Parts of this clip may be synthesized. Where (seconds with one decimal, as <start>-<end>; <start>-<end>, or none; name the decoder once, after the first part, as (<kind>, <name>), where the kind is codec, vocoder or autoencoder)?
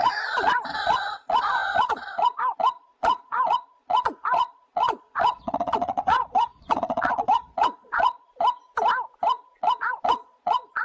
0.0-8.3 (vocoder, Vocos); 9.6-10.8